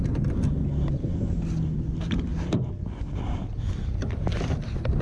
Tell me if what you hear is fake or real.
real